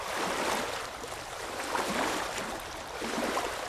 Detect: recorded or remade remade